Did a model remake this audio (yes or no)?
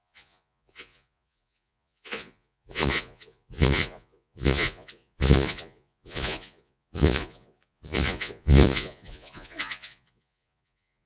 yes